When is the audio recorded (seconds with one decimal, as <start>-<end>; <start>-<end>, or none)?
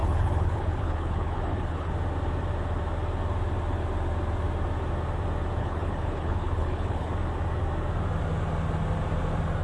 1.9-5.6; 7.1-9.6